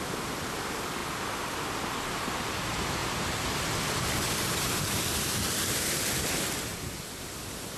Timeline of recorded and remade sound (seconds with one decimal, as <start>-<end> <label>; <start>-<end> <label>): 0.0-1.0 remade; 1.0-1.6 recorded; 1.6-3.0 remade; 3.0-3.7 recorded; 3.7-7.8 remade